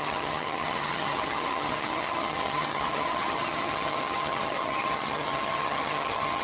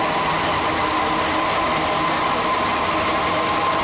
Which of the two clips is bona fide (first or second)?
second